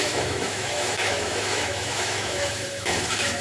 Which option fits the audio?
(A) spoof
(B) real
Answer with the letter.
A